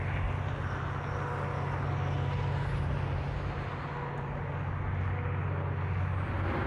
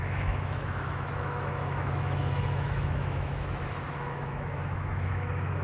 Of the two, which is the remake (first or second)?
second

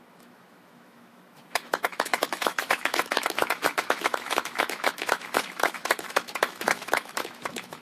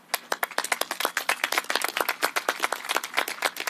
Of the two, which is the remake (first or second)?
first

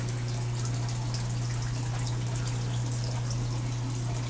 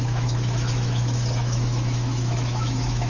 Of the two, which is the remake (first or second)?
second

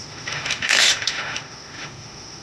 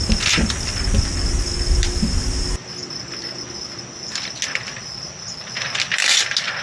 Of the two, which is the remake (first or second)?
first